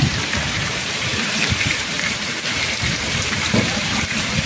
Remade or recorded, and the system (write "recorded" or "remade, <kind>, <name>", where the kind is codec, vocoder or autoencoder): remade, vocoder, BigVGAN v2